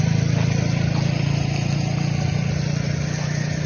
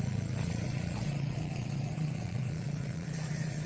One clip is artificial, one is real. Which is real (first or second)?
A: first